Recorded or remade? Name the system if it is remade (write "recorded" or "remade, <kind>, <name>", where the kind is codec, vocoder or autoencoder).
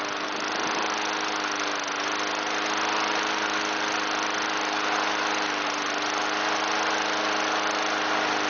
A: recorded